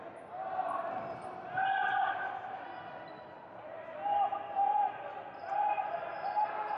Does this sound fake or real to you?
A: real